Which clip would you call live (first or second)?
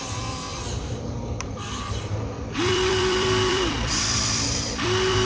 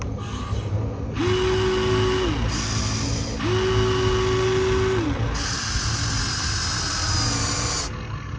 second